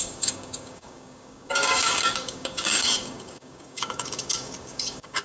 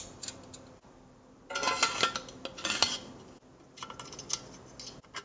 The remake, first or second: first